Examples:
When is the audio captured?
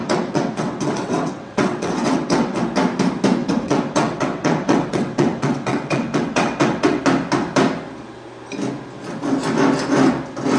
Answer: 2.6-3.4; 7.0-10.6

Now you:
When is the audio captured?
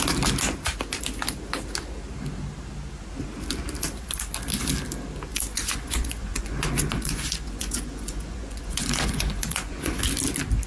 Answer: 0.0-5.3; 10.0-10.7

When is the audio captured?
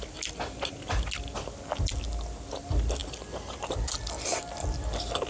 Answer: 0.0-5.3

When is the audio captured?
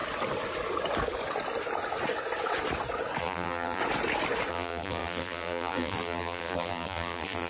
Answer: 0.0-3.2; 3.8-4.5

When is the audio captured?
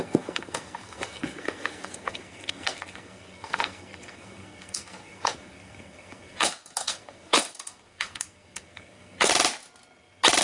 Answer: 9.3-10.4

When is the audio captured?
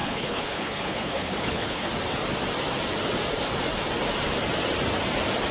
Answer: 1.9-5.5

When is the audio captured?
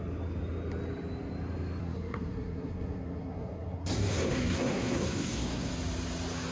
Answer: 0.0-1.8; 5.7-6.5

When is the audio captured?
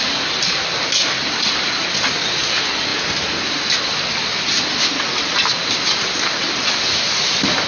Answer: 0.0-7.7